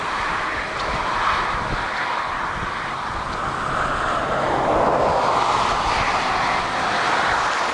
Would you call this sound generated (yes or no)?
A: no